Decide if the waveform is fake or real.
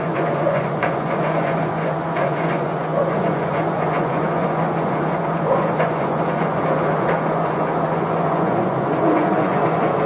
fake